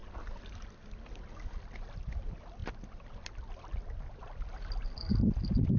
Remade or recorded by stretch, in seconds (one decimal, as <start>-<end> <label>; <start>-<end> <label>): 0.0-5.8 recorded